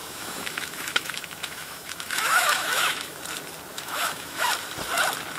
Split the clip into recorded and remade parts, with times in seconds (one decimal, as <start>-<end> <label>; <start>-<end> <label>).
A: 0.0-3.2 remade; 3.2-3.7 recorded; 3.7-4.5 remade; 4.5-5.4 recorded